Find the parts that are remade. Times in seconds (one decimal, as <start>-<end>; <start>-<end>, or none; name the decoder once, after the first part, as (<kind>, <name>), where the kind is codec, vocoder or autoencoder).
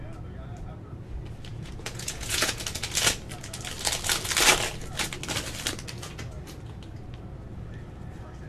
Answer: 1.5-2.6 (vocoder, Vocos)